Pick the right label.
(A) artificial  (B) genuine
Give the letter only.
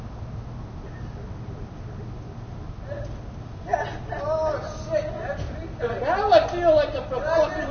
B